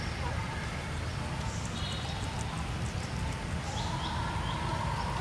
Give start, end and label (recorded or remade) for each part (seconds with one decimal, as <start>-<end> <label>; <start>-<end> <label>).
0.0-5.2 recorded